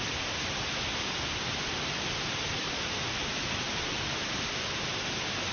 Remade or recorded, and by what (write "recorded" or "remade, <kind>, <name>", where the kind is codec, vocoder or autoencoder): recorded